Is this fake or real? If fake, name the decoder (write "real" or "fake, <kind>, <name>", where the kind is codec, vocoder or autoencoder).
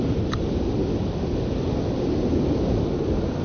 real